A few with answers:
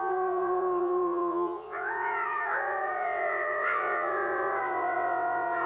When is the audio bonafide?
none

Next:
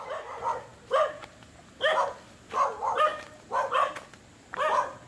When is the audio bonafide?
0.0-5.1

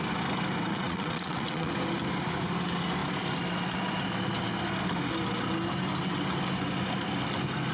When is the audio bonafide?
0.0-0.7; 1.7-7.7

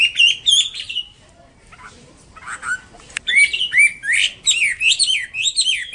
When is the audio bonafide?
0.0-5.9

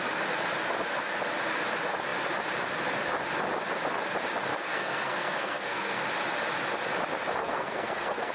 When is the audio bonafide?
0.0-4.5; 6.0-7.4

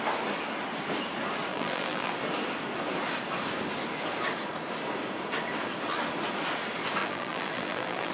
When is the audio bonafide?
0.0-1.5; 2.1-7.0

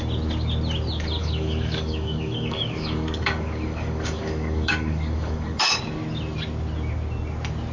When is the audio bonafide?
0.0-1.2; 5.8-7.7